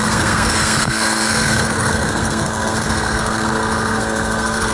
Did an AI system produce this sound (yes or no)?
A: yes